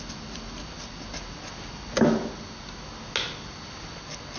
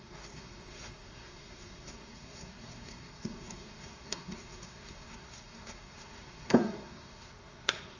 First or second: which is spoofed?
second